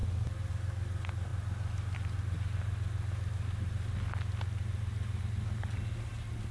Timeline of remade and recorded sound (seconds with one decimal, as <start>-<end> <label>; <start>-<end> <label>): 0.0-6.5 recorded